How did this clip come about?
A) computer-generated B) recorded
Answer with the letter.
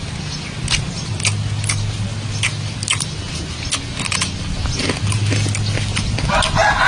B